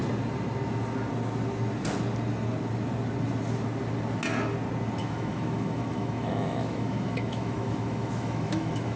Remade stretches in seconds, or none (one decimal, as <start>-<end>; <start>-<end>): 5.0-9.0